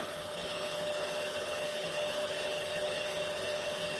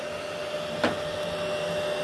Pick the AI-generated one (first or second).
first